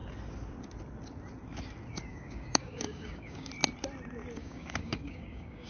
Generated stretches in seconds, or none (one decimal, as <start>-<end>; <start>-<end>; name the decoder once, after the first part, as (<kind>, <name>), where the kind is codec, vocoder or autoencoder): 2.1-3.5 (codec, DAC); 4.4-5.7